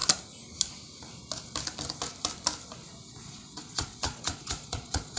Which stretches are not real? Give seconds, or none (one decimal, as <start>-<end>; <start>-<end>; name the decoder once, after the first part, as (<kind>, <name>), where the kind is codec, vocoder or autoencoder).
3.1-5.2 (vocoder, Vocos)